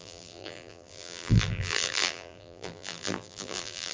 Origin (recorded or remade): remade